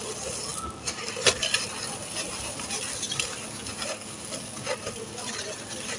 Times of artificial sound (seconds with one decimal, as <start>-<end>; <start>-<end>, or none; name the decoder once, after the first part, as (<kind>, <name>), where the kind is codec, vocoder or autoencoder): none